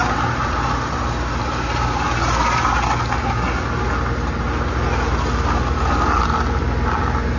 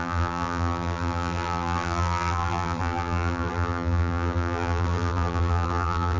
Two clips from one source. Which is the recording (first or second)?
first